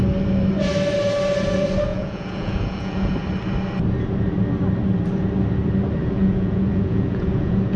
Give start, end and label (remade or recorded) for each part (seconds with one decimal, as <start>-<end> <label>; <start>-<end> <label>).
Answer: 0.0-1.9 recorded; 1.9-3.1 remade; 3.1-6.0 recorded; 6.0-7.8 remade